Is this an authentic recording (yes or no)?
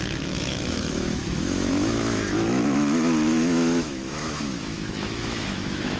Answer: no